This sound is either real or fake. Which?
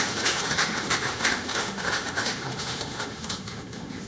fake